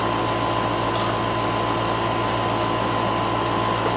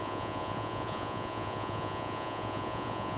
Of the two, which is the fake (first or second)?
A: second